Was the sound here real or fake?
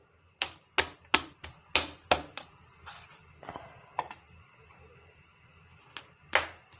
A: real